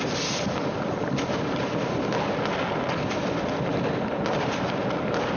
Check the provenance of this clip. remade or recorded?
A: recorded